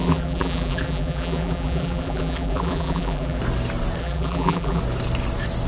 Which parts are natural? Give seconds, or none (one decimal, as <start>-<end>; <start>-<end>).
3.4-4.0; 4.8-5.7